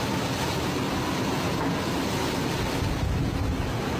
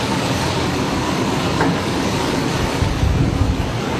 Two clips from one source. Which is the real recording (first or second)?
first